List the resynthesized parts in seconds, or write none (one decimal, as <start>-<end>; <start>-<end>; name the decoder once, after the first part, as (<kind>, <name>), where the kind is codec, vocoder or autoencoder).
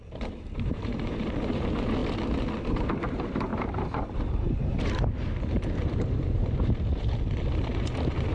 0.0-2.0 (vocoder, BigVGAN v2); 2.7-8.3